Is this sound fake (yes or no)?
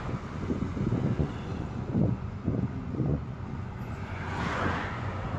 yes